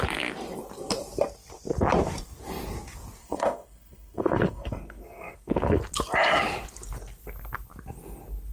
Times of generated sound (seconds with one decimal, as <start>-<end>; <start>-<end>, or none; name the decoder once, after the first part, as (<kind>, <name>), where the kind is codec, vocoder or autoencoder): 3.2-5.8 (codec, SNAC)